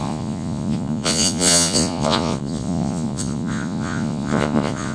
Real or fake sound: fake